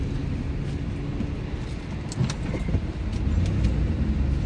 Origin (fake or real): real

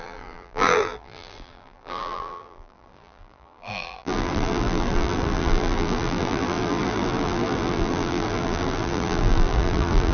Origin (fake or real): fake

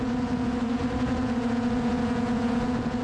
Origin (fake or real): fake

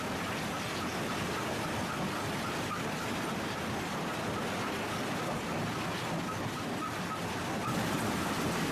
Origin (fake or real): real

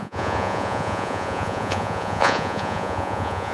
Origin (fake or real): fake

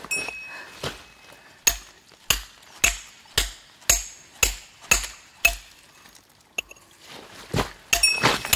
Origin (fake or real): real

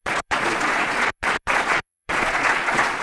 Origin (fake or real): fake